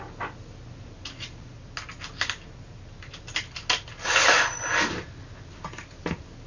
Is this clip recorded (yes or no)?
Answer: yes